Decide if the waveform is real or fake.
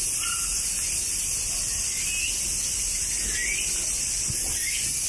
real